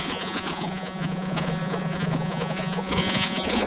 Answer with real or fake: fake